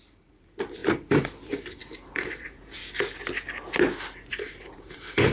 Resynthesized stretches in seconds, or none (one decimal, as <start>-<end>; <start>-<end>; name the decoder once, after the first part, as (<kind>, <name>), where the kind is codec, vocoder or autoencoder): 0.0-2.8 (vocoder, BigVGAN v2); 4.3-5.3

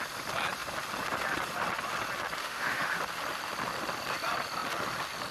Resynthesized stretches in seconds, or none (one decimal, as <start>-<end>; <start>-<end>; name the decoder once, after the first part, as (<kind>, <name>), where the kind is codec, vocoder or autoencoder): 2.4-3.0 (autoencoder, DAC-VAE)

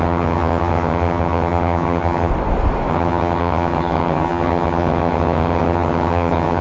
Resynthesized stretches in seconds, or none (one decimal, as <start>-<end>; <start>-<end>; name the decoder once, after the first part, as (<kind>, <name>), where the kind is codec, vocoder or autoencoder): 0.0-2.3 (vocoder, HiFi-GAN); 2.9-6.6

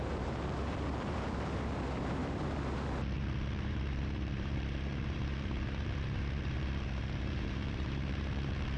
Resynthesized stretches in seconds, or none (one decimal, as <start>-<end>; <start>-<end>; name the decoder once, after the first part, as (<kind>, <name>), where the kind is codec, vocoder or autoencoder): 0.0-8.8 (vocoder, BigVGAN v2)

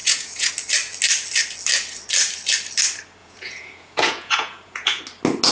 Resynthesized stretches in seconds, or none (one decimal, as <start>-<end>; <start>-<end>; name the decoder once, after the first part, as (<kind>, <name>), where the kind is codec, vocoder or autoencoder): 0.0-0.5 (vocoder, Vocos); 3.2-5.0